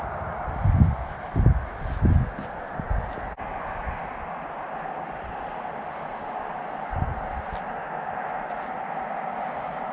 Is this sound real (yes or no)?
yes